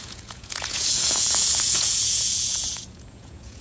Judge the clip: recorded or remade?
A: remade